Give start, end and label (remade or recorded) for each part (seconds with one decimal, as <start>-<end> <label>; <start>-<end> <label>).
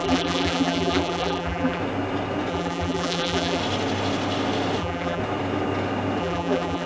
0.0-1.8 remade; 1.8-2.5 recorded; 2.5-3.6 remade; 3.6-4.8 recorded; 4.8-5.2 remade; 5.2-6.2 recorded; 6.2-6.9 remade